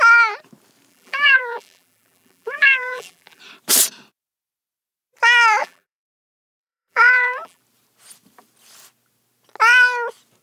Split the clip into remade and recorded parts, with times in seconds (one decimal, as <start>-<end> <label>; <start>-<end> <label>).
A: 0.0-0.9 recorded; 0.9-3.4 remade; 3.4-5.6 recorded; 5.6-7.6 remade; 7.6-10.4 recorded